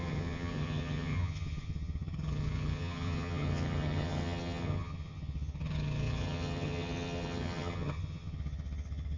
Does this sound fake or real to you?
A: fake